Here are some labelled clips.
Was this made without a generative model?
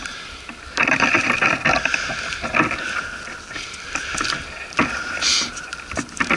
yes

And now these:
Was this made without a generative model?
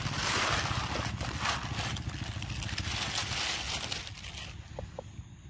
yes